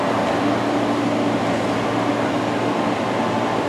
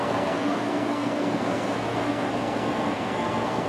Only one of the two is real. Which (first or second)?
first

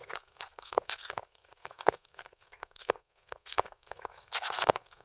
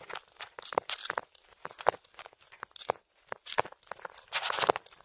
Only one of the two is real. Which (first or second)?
second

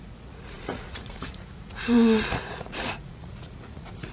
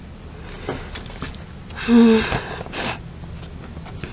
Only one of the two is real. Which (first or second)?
second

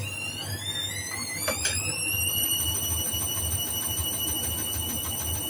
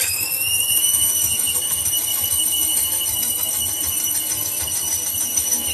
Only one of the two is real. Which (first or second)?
first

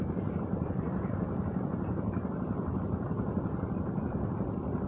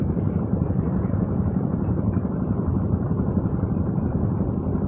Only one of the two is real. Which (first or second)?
first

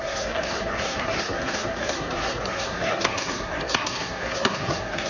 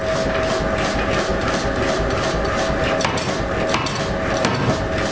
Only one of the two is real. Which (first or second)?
second